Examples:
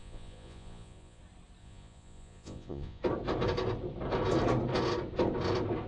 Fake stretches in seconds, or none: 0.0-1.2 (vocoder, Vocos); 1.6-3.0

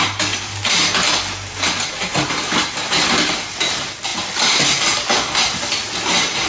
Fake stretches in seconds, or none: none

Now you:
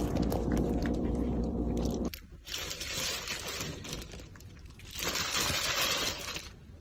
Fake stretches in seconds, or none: 0.8-3.2 (vocoder, BigVGAN v2); 4.3-4.9

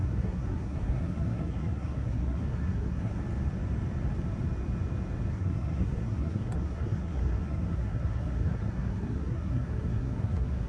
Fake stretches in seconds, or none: 0.0-3.2 (codec, SNAC); 5.3-10.7

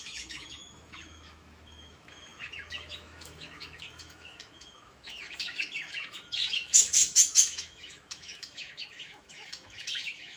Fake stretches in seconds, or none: 0.0-10.4 (autoencoder, DAC-VAE)

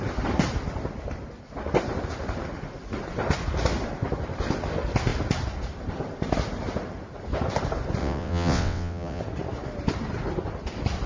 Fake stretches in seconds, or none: 8.0-9.2 (vocoder, WaveNeXt)

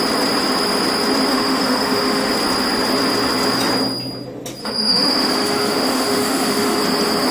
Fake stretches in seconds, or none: 1.3-2.3 (autoencoder, DAC-VAE); 4.6-6.8

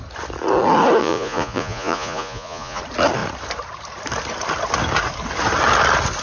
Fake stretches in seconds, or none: 1.0-2.8 (vocoder, Vocos)